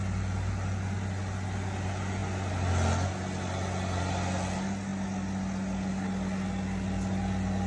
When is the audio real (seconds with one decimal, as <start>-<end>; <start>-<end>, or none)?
0.0-7.7